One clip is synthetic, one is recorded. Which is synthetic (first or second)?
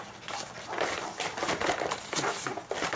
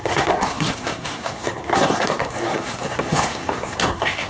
second